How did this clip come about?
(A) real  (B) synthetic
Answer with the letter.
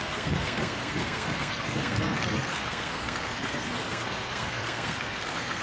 B